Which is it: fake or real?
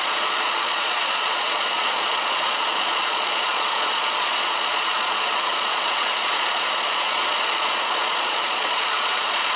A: fake